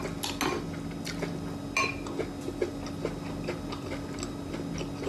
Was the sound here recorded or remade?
recorded